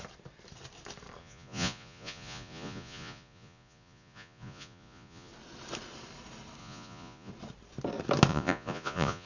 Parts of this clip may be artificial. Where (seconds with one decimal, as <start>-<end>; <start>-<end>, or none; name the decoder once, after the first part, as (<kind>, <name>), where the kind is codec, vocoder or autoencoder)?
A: 1.2-5.3 (vocoder, Vocos); 6.6-7.3; 8.3-9.3